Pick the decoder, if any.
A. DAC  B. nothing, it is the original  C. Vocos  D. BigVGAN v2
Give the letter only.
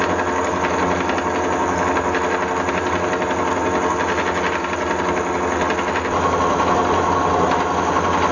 B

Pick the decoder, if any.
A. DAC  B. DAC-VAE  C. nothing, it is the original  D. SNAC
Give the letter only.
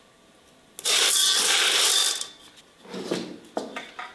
C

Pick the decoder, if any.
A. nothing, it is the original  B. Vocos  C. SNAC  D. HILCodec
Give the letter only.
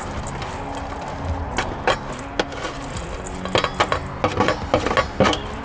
A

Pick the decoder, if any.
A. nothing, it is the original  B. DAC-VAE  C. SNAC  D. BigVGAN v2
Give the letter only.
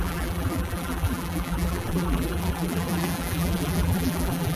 D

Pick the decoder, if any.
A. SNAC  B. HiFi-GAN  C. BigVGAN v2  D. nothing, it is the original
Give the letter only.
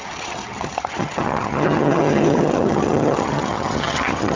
B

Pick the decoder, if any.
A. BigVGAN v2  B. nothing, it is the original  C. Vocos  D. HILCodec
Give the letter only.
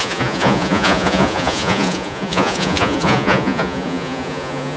C